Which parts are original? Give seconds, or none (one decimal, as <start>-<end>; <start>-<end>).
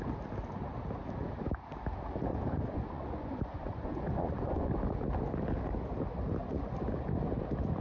0.0-2.3; 4.7-7.8